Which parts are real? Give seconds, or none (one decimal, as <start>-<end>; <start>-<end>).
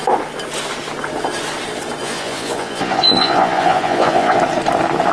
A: 0.0-2.0; 4.4-5.1